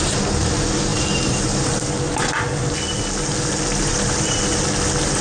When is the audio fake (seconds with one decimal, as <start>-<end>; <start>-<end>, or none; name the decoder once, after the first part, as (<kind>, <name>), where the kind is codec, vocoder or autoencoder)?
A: 0.9-1.8 (vocoder, BigVGAN v2); 3.9-4.5

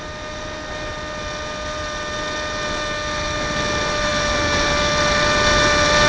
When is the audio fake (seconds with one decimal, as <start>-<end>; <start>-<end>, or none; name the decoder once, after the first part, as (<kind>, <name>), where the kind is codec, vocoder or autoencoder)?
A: none